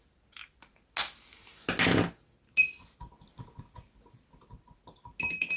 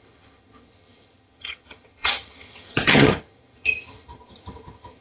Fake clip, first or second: second